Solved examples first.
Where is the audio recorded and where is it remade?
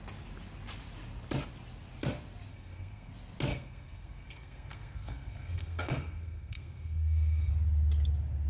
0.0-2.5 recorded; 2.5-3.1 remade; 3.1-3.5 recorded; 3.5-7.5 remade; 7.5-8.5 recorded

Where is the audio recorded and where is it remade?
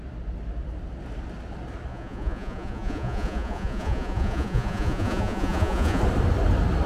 0.0-1.9 recorded; 1.9-6.0 remade; 6.0-6.9 recorded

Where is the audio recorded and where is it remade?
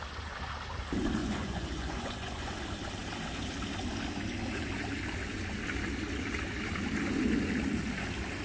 0.0-1.2 recorded; 1.2-2.5 remade; 2.5-8.4 recorded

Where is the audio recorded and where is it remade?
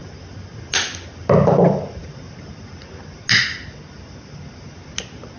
0.0-5.4 recorded